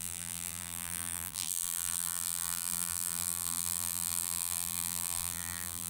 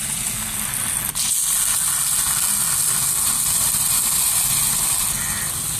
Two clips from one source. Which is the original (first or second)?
second